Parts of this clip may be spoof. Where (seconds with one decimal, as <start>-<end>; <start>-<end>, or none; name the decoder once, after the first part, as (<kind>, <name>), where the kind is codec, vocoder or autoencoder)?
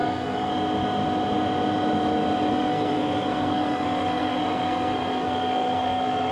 0.0-0.5 (codec, SNAC); 2.5-6.3